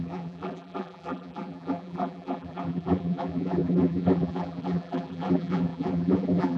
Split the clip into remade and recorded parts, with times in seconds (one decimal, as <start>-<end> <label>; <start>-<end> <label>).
0.0-6.6 remade